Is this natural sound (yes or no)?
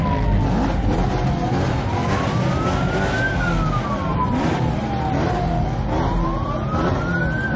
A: yes